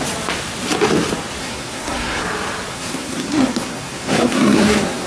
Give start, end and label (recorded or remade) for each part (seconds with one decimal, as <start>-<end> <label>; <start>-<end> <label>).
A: 0.0-1.4 recorded; 1.4-2.2 remade; 2.2-2.7 recorded; 2.7-5.1 remade